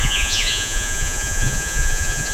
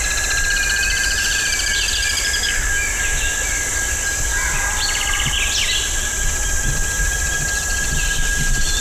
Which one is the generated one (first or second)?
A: first